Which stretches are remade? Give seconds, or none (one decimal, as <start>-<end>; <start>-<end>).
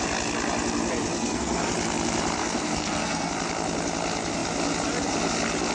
1.1-1.7; 2.4-3.3